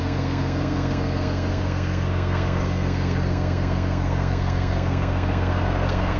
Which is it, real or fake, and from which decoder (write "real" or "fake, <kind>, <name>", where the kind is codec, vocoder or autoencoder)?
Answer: fake, codec, SNAC